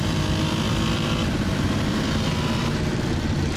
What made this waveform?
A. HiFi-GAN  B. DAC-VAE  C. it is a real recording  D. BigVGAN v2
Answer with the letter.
D